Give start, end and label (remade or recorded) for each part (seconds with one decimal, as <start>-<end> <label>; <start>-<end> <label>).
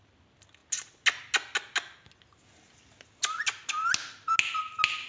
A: 0.0-5.1 recorded